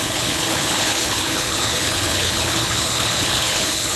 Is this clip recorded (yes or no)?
no